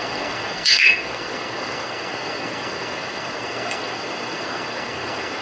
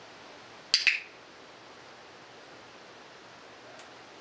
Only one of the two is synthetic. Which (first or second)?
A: first